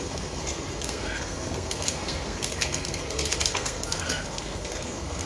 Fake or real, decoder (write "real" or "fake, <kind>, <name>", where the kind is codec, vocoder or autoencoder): fake, codec, SNAC